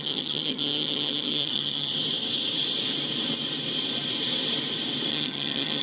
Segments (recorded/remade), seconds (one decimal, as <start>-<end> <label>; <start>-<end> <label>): 0.0-1.9 remade; 1.9-5.1 recorded; 5.1-5.8 remade